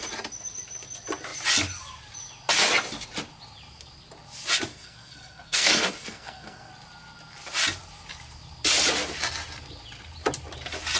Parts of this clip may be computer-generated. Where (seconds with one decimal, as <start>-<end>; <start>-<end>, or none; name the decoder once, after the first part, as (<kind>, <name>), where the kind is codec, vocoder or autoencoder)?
4.7-6.7 (codec, SNAC)